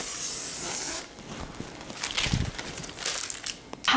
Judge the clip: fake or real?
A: real